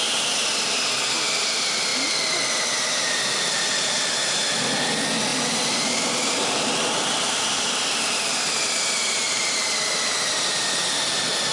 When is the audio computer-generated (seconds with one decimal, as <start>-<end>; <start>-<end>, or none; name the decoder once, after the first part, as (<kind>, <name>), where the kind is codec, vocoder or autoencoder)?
1.9-2.5 (vocoder, BigVGAN v2)